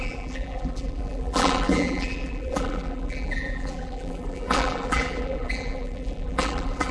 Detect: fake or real fake